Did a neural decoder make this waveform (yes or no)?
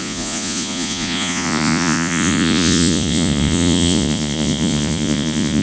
yes